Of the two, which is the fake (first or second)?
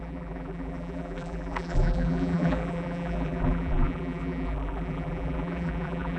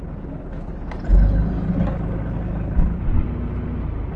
first